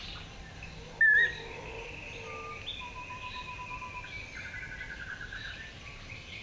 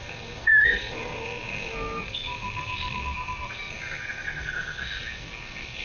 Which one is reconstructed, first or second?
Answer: second